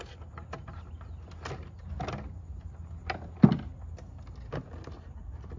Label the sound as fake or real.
real